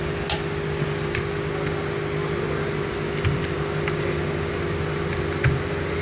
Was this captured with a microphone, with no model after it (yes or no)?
yes